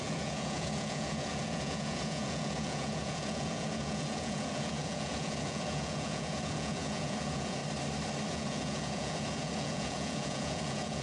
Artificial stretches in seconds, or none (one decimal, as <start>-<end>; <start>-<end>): 0.0-7.6; 8.3-11.0